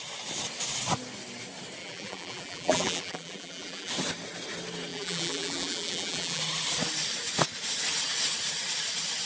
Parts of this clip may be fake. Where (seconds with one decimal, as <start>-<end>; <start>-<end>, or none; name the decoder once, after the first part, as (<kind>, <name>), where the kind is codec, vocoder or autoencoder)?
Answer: 1.8-3.9 (vocoder, BigVGAN v2); 4.9-6.4